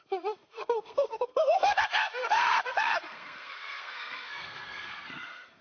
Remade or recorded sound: remade